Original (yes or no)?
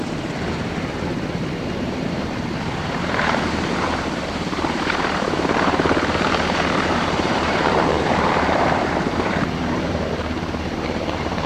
no